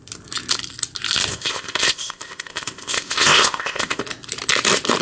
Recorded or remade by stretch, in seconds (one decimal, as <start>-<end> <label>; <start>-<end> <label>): 0.0-1.3 recorded; 1.3-4.0 remade; 4.0-5.0 recorded